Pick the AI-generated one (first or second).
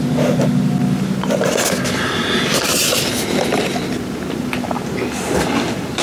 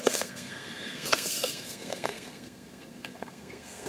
second